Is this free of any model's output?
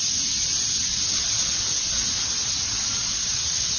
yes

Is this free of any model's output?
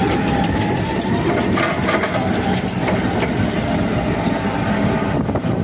yes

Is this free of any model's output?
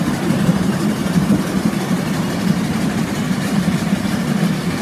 no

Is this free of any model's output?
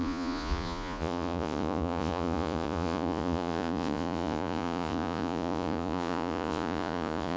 no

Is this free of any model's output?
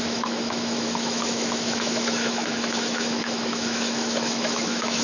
no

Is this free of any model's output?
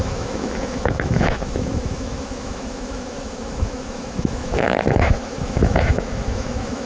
no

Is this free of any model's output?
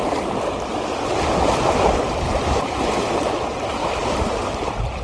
yes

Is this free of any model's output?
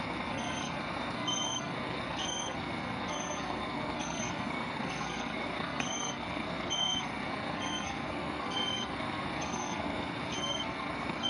no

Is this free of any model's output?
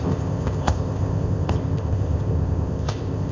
no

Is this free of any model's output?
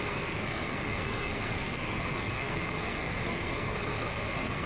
no